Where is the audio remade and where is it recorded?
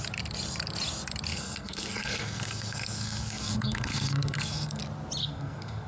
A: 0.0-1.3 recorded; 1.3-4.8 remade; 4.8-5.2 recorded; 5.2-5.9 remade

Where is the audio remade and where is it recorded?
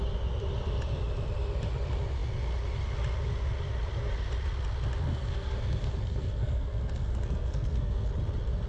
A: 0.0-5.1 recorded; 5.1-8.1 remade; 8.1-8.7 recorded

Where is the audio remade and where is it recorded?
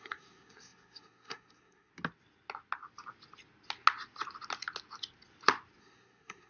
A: 0.0-1.9 remade; 1.9-5.8 recorded; 5.8-6.5 remade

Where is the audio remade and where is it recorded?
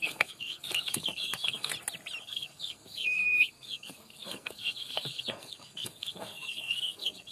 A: 0.0-1.7 remade; 1.7-2.2 recorded; 2.2-7.3 remade